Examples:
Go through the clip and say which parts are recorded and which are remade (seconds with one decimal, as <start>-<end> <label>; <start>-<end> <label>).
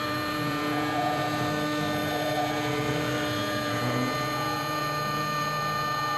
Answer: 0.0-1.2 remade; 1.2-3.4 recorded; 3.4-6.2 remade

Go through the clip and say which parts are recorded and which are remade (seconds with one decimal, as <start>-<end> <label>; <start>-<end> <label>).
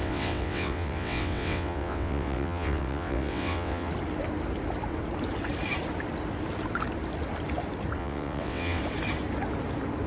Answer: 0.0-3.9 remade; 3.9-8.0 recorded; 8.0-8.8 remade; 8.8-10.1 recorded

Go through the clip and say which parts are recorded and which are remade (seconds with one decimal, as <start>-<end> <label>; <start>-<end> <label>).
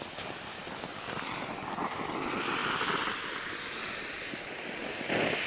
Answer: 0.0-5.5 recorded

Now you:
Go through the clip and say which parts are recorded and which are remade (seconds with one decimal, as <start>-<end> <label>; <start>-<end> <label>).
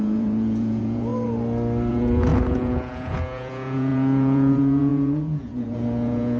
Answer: 0.0-1.1 remade; 1.1-1.9 recorded; 1.9-6.4 remade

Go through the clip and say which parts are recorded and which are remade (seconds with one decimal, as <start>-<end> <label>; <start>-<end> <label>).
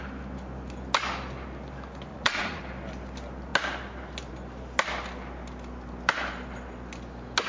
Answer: 0.0-2.1 recorded; 2.1-2.6 remade; 2.6-7.5 recorded